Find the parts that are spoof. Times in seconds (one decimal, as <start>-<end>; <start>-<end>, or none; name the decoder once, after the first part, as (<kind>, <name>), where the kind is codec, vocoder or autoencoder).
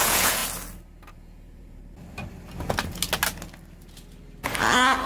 0.0-0.4 (vocoder, Vocos); 1.1-1.8